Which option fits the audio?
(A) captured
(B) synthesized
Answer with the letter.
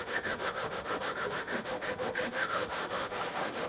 B